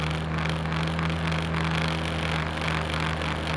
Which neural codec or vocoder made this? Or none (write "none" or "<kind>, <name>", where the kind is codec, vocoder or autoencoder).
none